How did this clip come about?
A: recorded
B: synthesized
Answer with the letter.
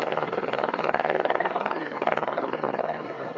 B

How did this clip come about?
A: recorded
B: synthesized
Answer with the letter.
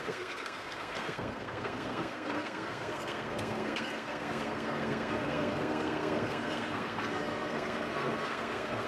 B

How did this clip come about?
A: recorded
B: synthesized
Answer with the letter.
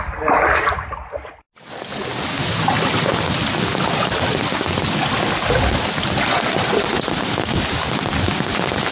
A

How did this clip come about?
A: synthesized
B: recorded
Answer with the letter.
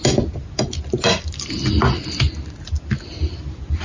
B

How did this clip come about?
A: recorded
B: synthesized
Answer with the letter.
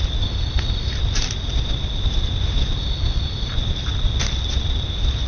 A